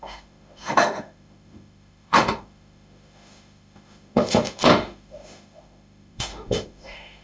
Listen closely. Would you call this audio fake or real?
fake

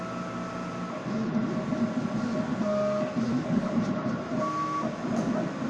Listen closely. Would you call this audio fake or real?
real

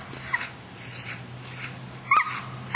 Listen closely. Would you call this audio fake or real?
real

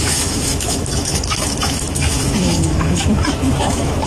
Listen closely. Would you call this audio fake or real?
fake